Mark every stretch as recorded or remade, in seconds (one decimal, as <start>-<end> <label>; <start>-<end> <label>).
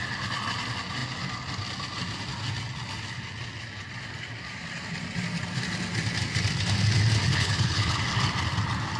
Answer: 0.0-7.3 recorded; 7.3-8.0 remade; 8.0-9.0 recorded